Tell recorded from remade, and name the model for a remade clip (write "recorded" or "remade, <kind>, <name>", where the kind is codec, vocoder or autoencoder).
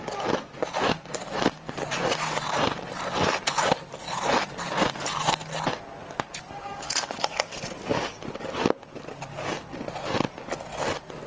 recorded